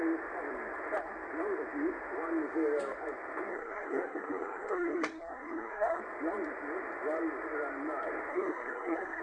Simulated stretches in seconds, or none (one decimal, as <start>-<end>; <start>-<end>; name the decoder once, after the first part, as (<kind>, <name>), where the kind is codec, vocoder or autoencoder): 3.5-6.0 (codec, SNAC); 8.3-9.2